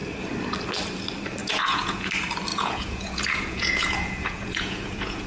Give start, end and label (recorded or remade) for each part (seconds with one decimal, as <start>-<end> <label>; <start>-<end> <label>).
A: 0.0-1.4 recorded; 1.4-2.1 remade; 2.1-2.5 recorded; 2.5-5.3 remade